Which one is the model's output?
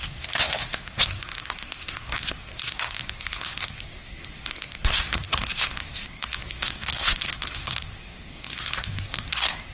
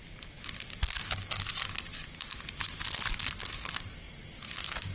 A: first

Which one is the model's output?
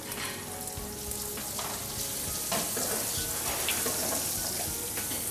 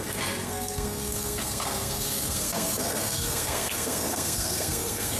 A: second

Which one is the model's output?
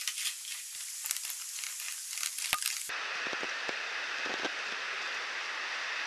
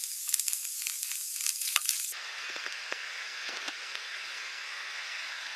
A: second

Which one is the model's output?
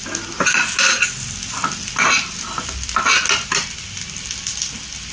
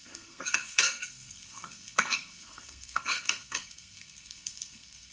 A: second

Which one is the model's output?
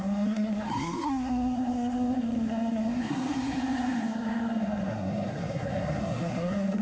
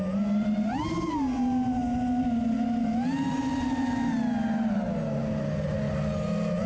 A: first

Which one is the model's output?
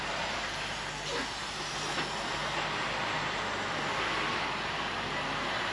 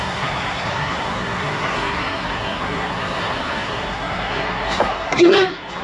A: second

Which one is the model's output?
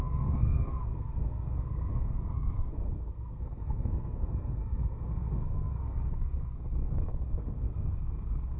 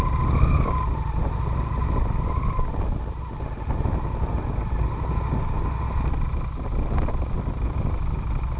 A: first